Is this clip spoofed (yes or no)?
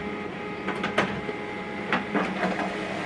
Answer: no